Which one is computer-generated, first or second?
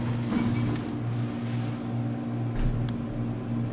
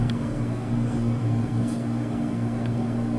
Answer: second